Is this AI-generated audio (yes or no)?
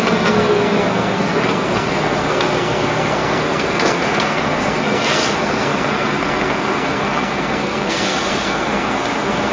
yes